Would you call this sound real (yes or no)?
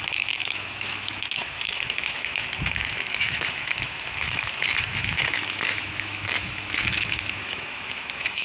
no